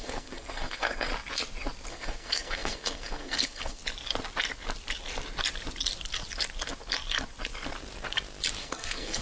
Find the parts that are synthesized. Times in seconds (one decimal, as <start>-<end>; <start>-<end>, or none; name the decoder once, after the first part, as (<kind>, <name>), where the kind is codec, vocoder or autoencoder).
0.0-1.1 (codec, SNAC); 1.9-3.8; 8.6-9.2